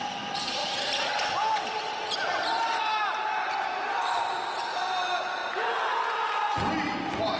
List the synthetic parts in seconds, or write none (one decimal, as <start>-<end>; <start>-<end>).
0.0-0.6; 2.8-5.4